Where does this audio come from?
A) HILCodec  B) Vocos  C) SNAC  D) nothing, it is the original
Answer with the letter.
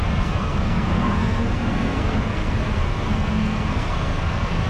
C